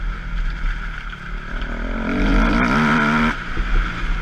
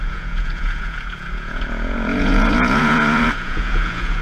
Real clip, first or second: first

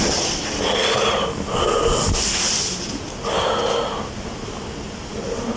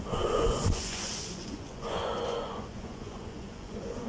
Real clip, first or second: first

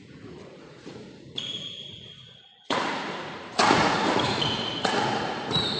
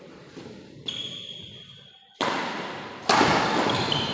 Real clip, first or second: second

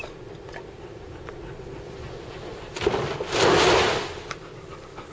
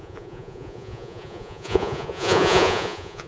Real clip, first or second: first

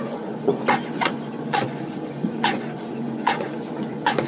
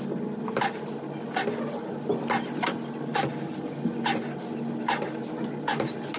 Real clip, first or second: second